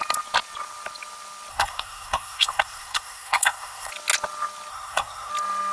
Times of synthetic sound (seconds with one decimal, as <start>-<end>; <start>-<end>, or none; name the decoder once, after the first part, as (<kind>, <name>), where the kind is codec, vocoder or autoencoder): 1.5-3.9 (codec, SNAC); 4.7-5.3